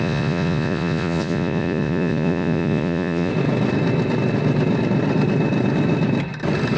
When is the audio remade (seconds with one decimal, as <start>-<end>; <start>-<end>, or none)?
0.0-3.3